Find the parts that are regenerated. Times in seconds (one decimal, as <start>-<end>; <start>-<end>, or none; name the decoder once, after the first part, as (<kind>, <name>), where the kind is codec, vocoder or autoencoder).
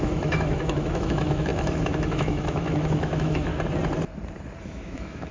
0.0-3.5 (autoencoder, DAC-VAE); 4.6-5.3